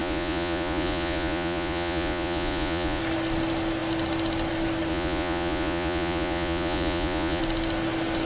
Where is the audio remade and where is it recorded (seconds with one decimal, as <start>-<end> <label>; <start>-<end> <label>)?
0.0-3.0 remade; 3.0-4.9 recorded; 4.9-7.4 remade; 7.4-8.2 recorded

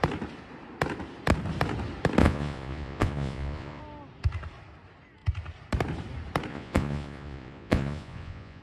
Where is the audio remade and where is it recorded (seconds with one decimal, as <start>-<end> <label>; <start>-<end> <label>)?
0.0-2.2 recorded; 2.2-3.8 remade; 3.8-6.5 recorded; 6.5-8.6 remade

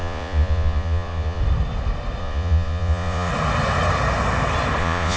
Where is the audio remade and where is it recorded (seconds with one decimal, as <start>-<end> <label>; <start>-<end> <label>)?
0.0-1.4 remade; 1.4-2.2 recorded; 2.2-3.3 remade; 3.3-4.8 recorded; 4.8-5.2 remade

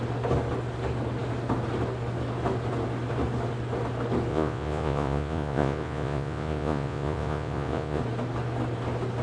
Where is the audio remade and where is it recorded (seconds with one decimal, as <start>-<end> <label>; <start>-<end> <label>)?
0.0-4.3 recorded; 4.3-8.0 remade; 8.0-9.2 recorded

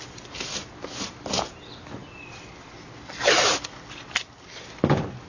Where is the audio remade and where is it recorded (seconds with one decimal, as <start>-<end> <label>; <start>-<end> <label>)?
0.0-5.3 recorded

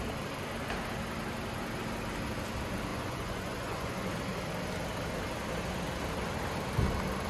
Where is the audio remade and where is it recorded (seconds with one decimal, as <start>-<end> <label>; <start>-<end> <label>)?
0.0-2.9 recorded; 2.9-4.1 remade; 4.1-7.3 recorded

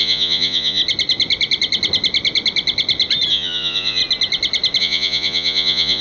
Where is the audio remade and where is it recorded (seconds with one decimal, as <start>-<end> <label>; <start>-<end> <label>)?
0.0-0.8 remade; 0.8-3.3 recorded; 3.3-4.0 remade; 4.0-4.8 recorded; 4.8-6.0 remade

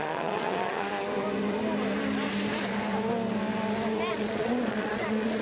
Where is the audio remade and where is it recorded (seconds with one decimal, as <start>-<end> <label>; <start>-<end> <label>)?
0.0-0.9 remade; 0.9-4.1 recorded; 4.1-5.4 remade